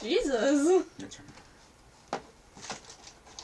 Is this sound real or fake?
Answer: real